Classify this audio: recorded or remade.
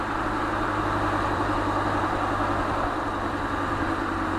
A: remade